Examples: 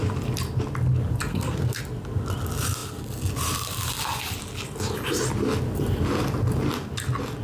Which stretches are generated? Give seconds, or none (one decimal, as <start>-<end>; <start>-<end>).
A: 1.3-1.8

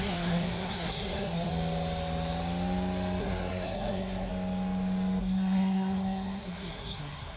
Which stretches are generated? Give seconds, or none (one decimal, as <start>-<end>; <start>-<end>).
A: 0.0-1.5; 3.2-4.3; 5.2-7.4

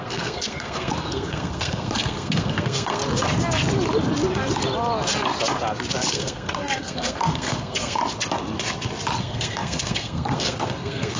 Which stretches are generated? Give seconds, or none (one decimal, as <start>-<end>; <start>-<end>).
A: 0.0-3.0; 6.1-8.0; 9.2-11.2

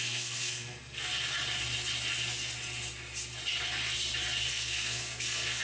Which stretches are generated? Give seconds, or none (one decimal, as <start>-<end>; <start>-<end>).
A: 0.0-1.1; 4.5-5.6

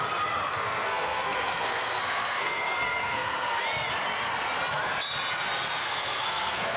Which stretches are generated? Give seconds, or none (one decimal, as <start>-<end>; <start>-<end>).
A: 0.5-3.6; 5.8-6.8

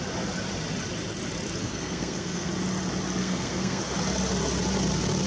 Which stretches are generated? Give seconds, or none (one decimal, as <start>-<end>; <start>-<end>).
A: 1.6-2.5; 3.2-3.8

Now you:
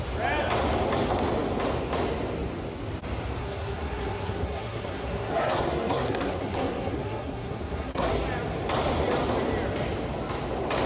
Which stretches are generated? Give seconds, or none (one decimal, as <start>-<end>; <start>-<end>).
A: 3.4-8.1

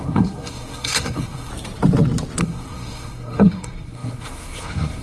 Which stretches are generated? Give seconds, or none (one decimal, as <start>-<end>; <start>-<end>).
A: 0.0-1.5; 2.4-5.0